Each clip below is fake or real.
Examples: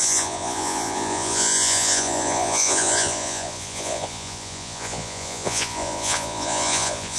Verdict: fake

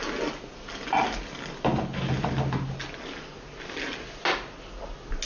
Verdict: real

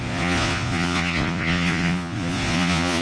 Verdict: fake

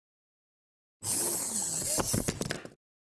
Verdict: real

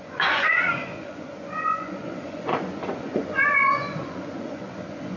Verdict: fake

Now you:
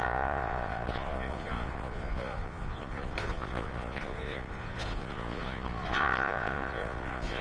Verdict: fake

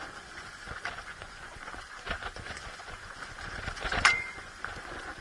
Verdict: fake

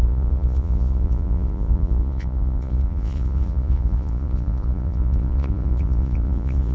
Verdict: fake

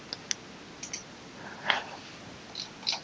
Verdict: real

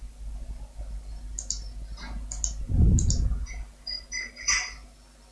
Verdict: real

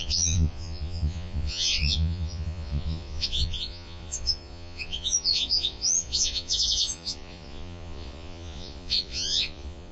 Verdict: fake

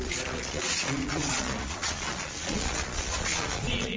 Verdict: fake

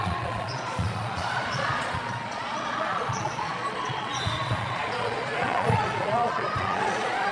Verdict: fake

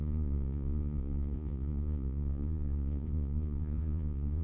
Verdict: fake